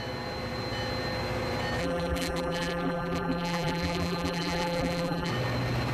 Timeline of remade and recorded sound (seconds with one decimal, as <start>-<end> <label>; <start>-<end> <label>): 0.0-1.8 recorded; 1.8-5.3 remade; 5.3-5.9 recorded